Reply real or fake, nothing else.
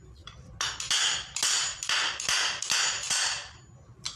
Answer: real